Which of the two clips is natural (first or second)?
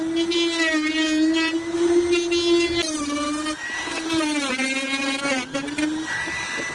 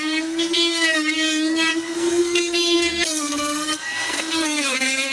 first